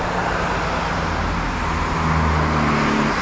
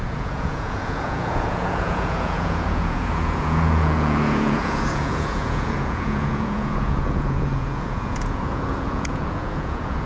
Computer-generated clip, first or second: second